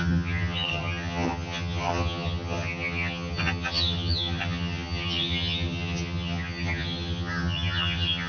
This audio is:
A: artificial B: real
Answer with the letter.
A